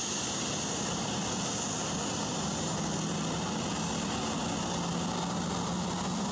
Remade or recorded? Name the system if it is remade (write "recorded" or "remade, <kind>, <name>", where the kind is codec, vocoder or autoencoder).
recorded